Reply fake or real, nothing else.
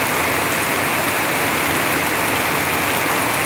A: real